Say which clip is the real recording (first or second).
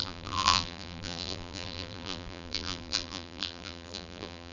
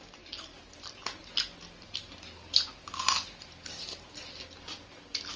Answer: second